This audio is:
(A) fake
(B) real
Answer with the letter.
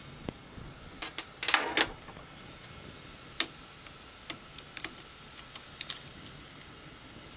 B